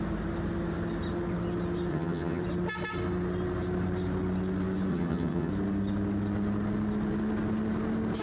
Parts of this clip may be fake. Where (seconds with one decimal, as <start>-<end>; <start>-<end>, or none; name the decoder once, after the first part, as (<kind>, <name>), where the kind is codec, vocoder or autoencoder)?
1.9-2.4 (vocoder, HiFi-GAN); 4.9-5.5